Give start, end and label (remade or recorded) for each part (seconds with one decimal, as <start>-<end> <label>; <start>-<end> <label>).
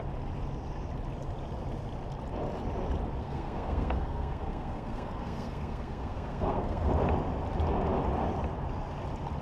0.0-3.2 recorded; 3.2-6.9 remade; 6.9-9.4 recorded